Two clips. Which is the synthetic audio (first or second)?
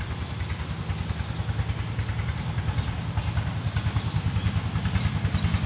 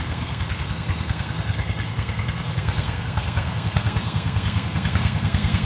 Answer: second